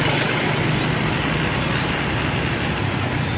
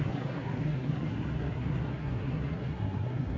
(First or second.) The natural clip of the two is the first